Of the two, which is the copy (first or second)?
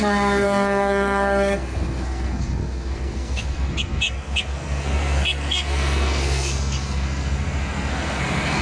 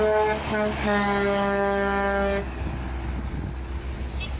first